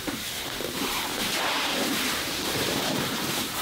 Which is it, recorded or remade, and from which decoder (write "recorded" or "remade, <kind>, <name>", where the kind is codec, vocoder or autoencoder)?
remade, vocoder, BigVGAN v2